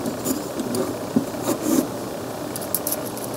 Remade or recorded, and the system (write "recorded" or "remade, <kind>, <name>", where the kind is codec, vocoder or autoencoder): recorded